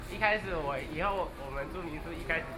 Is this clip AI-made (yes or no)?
no